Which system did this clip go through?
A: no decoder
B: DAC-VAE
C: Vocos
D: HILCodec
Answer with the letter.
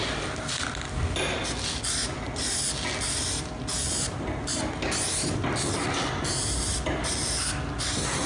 A